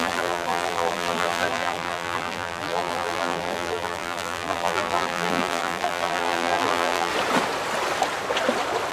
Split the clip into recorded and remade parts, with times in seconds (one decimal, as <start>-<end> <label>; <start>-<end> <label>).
0.0-7.1 remade; 7.1-8.9 recorded